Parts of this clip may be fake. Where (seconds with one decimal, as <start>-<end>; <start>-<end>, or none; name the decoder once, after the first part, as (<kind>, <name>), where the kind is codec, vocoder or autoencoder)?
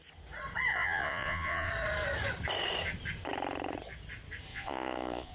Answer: 0.7-1.7 (vocoder, Vocos); 4.5-5.3